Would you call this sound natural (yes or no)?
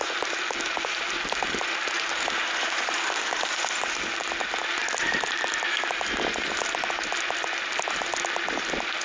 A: yes